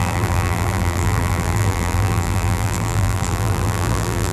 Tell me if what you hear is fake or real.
fake